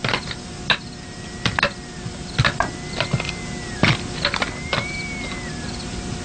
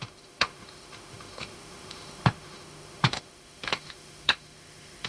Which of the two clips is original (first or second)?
first